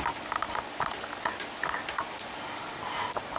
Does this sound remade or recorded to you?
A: recorded